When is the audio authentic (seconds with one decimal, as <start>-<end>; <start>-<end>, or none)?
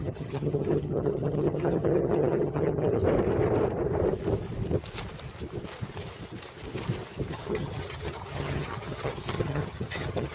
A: 3.0-7.3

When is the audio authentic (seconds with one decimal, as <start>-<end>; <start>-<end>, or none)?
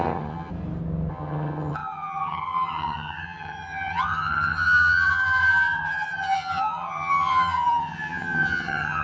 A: 0.5-1.1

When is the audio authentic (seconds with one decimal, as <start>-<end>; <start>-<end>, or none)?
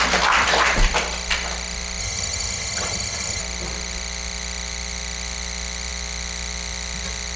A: 0.0-2.0; 3.4-7.4